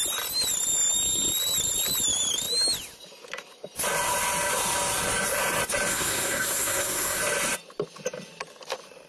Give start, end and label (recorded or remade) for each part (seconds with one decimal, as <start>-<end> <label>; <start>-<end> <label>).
0.0-5.9 recorded; 5.9-7.2 remade; 7.2-9.1 recorded